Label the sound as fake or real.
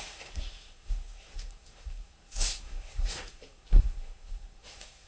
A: fake